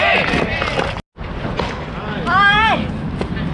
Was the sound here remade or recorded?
recorded